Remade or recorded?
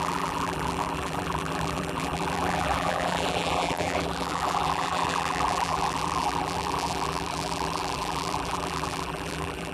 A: remade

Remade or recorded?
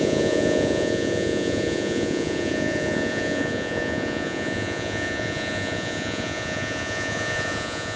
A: remade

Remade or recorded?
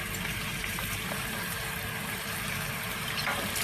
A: remade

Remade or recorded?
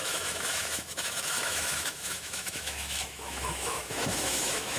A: remade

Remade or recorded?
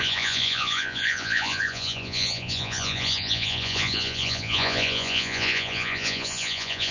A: remade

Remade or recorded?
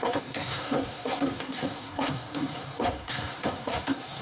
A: remade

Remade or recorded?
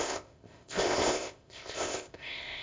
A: remade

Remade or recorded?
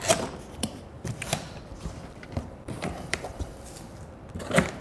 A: remade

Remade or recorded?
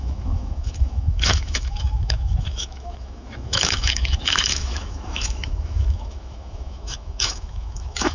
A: remade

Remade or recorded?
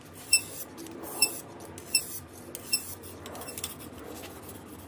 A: recorded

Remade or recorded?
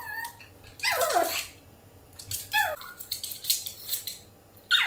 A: recorded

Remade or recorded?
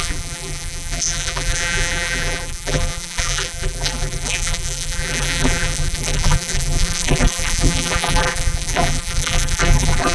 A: remade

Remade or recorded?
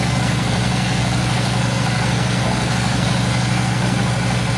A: remade